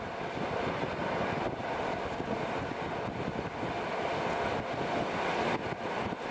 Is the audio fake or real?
real